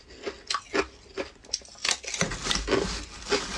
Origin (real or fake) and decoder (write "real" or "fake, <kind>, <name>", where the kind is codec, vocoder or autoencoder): real